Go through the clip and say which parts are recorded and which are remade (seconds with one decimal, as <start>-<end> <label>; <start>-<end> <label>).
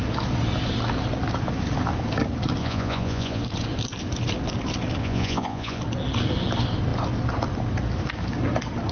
0.0-2.6 recorded; 2.6-3.4 remade; 3.4-5.0 recorded; 5.0-5.8 remade; 5.8-8.9 recorded